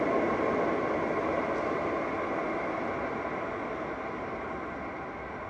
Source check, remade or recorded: recorded